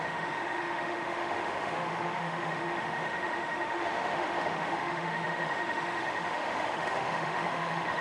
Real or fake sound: fake